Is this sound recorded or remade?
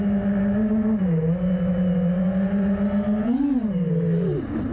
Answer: recorded